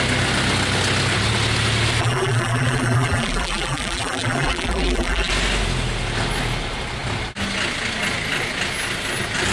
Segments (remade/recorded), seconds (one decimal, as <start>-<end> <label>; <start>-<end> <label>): 0.0-2.0 recorded; 2.0-5.3 remade; 5.3-9.5 recorded